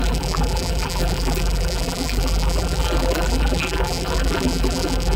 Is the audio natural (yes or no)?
no